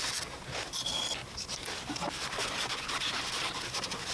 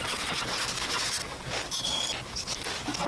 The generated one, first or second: first